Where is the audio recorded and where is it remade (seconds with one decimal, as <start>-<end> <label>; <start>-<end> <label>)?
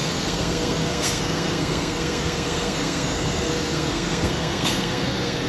0.0-5.5 remade